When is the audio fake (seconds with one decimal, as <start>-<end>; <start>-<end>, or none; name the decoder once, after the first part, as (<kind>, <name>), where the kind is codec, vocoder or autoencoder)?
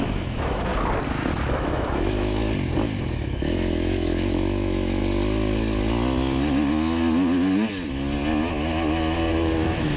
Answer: 0.0-0.7 (autoencoder, DAC-VAE); 1.5-2.4; 3.0-5.0; 9.3-10.0